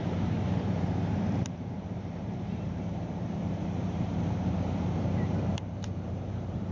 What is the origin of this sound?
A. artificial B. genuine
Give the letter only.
A